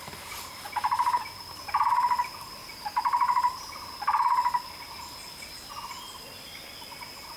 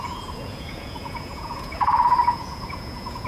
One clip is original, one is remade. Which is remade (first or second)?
second